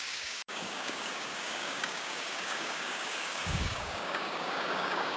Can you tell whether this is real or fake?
fake